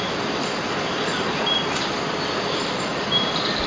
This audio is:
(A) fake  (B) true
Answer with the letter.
B